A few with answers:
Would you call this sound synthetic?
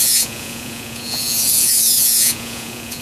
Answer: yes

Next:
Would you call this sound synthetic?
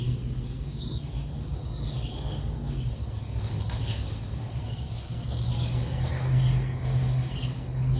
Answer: yes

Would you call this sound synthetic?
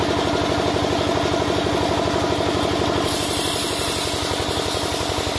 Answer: no